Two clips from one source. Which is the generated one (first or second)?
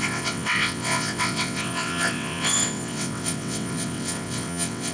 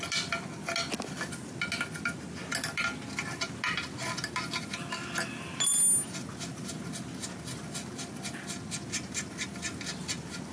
first